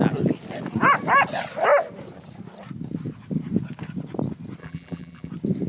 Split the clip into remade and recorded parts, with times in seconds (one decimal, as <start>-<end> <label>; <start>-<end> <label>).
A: 0.0-4.6 recorded; 4.6-5.3 remade; 5.3-5.7 recorded